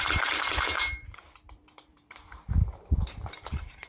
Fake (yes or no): yes